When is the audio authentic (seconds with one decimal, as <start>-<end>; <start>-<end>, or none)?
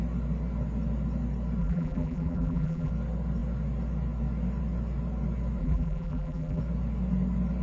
0.0-1.6; 2.9-5.6; 6.6-7.6